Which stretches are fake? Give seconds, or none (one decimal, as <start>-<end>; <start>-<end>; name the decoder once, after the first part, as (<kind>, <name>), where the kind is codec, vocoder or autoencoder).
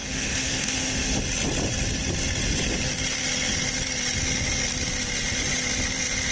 0.0-1.2 (autoencoder, DAC-VAE)